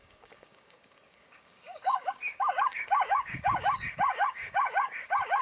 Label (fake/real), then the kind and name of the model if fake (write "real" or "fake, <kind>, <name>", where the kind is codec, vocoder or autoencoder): fake, codec, DAC